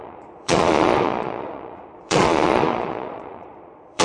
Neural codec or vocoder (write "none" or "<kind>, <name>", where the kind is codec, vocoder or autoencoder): vocoder, Vocos